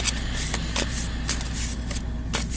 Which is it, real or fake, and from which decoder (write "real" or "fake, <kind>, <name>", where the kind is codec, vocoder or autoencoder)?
real